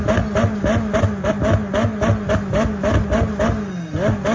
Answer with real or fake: real